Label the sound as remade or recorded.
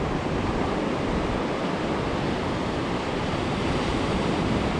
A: remade